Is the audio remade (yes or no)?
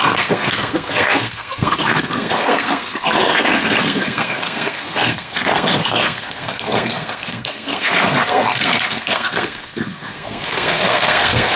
yes